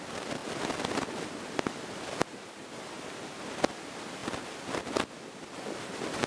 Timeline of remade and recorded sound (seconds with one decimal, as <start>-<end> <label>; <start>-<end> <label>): 0.0-6.3 recorded